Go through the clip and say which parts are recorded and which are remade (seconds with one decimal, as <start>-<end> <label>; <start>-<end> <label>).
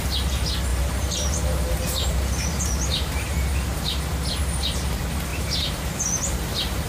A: 0.0-0.7 recorded; 0.7-4.0 remade; 4.0-5.3 recorded; 5.3-6.9 remade